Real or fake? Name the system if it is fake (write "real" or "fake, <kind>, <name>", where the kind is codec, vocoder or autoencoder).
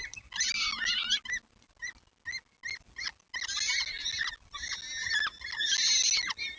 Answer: real